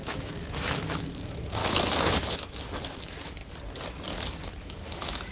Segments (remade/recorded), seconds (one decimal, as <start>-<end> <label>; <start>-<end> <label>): 0.0-3.4 remade; 3.4-4.4 recorded; 4.4-5.3 remade